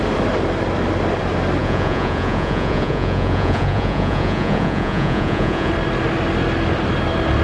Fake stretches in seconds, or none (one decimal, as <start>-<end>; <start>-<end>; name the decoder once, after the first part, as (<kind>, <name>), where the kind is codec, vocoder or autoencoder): 1.6-5.7 (vocoder, Vocos)